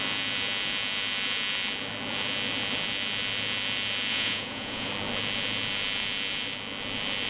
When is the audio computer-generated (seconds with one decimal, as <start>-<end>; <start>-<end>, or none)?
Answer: 4.1-4.9